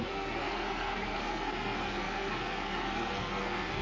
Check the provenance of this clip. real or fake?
fake